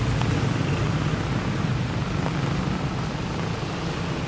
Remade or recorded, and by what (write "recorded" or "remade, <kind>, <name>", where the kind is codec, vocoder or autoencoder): recorded